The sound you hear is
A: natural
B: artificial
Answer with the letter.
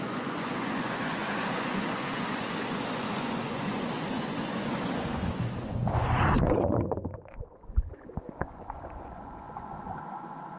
B